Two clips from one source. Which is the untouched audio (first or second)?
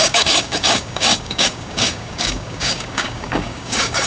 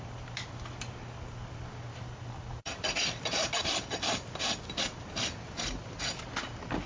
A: second